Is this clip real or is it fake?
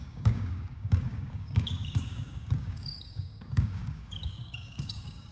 fake